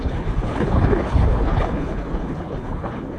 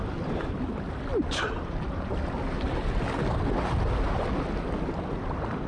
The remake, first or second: first